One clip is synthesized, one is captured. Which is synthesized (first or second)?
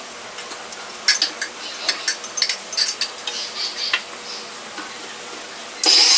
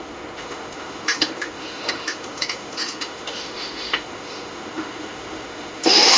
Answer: second